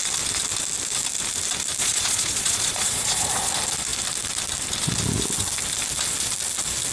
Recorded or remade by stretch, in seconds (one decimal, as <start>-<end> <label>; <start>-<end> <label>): 0.0-1.8 recorded; 1.8-3.5 remade; 3.5-6.9 recorded